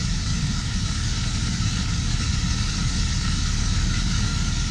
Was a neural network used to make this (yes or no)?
yes